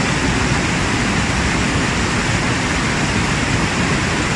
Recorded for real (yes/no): yes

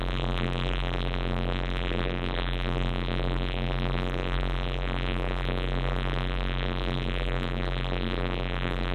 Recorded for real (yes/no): no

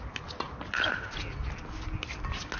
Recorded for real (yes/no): yes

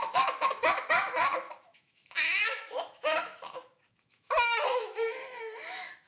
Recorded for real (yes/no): no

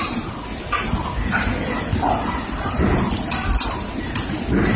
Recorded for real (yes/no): yes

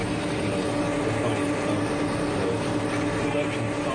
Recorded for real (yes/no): yes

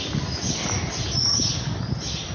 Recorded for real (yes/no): yes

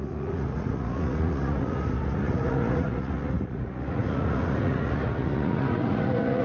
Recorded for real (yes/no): no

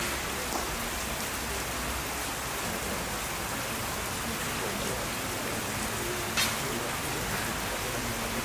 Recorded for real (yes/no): yes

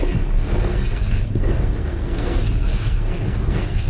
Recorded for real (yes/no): no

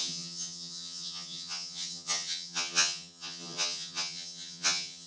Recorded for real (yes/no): no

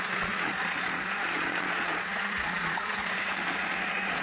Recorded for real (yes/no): no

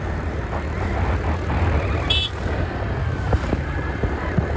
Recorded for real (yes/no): yes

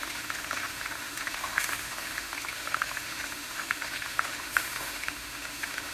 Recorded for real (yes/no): no